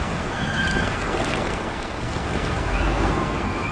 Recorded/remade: remade